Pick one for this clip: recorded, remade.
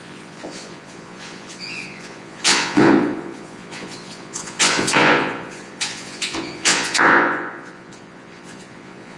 remade